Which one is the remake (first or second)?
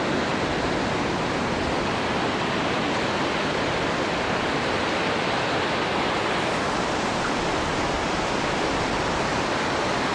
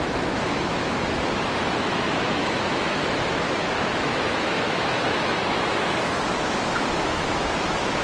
second